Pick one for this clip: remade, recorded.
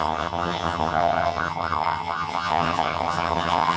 remade